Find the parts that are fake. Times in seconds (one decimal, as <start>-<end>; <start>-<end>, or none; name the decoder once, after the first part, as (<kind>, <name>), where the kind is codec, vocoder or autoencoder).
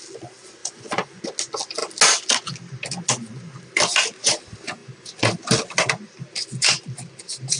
0.6-1.2 (vocoder, Vocos)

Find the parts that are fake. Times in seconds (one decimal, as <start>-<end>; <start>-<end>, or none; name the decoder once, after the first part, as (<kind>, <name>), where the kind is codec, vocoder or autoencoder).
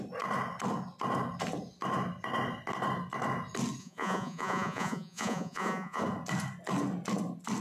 3.8-6.0 (vocoder, Vocos)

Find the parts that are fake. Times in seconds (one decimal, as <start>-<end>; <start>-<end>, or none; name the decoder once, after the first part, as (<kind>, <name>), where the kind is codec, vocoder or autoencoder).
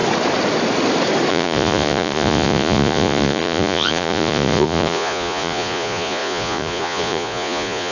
1.3-7.9 (vocoder, Vocos)